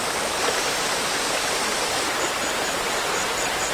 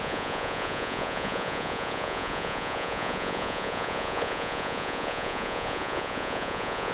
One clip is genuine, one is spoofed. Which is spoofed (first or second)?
second